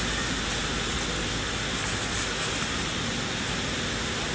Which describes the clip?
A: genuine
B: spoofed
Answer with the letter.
A